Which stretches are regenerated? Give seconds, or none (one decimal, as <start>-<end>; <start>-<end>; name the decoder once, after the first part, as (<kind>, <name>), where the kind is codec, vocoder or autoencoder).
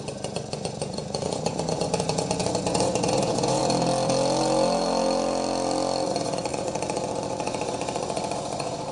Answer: 0.0-3.6 (vocoder, Vocos); 6.1-8.9